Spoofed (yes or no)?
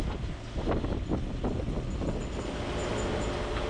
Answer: no